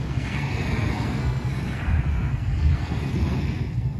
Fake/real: fake